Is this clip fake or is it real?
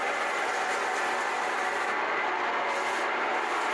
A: real